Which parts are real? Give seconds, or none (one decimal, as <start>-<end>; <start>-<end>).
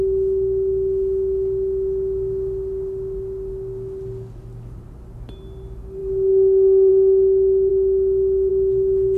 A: 0.0-9.2